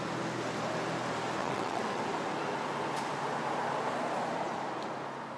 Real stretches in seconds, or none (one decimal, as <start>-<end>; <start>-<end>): 0.0-1.4; 2.0-5.4